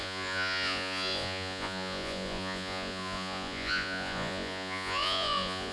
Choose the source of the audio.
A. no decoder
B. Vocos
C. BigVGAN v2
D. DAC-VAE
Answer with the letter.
B